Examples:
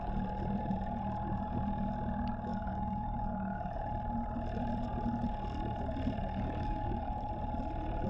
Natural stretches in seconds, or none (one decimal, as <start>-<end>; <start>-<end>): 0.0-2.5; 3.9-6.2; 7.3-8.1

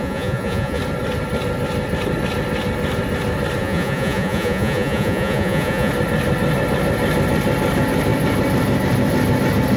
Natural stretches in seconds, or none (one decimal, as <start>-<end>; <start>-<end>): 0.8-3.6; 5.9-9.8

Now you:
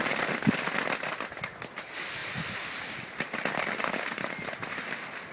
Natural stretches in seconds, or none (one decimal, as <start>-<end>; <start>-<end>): 0.0-5.3

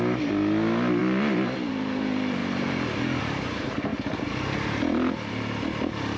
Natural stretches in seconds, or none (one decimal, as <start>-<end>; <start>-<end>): 0.0-6.2